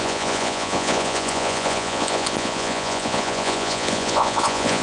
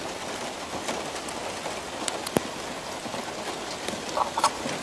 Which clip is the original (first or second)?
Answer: second